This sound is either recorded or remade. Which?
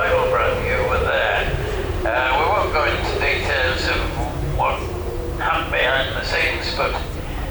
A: remade